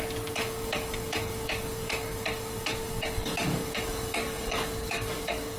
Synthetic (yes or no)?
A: yes